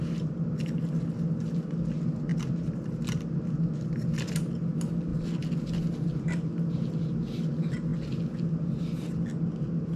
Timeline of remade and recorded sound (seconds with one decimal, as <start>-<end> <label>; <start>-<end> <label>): 0.0-10.0 recorded